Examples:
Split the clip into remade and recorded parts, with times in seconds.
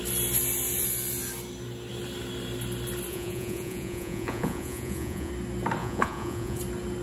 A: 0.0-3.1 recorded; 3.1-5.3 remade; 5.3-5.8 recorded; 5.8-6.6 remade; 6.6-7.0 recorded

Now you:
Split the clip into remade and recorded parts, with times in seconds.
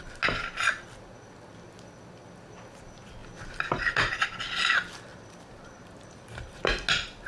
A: 0.0-3.2 recorded; 3.2-4.1 remade; 4.1-5.1 recorded; 5.1-6.7 remade; 6.7-7.3 recorded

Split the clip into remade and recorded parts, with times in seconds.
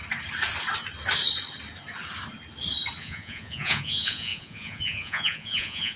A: 0.0-3.0 recorded; 3.0-6.0 remade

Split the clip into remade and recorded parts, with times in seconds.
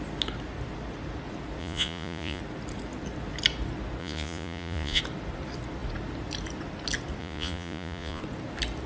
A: 0.0-1.6 recorded; 1.6-2.4 remade; 2.4-4.0 recorded; 4.0-5.0 remade; 5.0-7.2 recorded; 7.2-8.2 remade; 8.2-8.9 recorded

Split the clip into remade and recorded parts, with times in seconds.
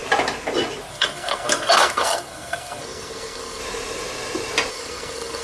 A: 0.0-0.9 recorded; 0.9-3.6 remade; 3.6-4.7 recorded; 4.7-5.4 remade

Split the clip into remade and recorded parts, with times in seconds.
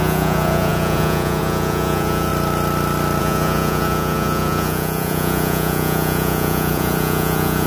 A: 0.0-2.3 remade; 2.3-3.2 recorded; 3.2-7.7 remade